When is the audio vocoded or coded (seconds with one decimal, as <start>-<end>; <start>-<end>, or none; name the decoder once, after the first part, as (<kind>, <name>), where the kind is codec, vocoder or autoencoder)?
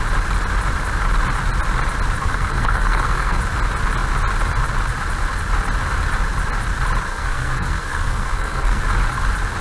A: 2.2-3.4 (codec, SNAC); 7.1-8.8